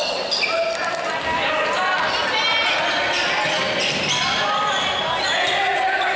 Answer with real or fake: real